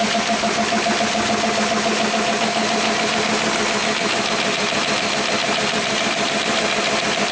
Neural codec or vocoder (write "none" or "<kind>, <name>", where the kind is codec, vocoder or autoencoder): none